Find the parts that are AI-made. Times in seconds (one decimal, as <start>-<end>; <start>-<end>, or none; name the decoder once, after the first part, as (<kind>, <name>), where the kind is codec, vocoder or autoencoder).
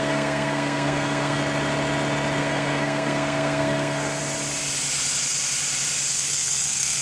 0.0-1.4 (codec, SNAC); 2.4-4.2; 6.1-7.0